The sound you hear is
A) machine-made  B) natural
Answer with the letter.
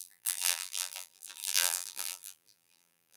A